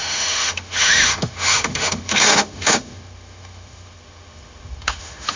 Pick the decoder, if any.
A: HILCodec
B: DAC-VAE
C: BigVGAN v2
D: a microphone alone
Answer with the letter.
B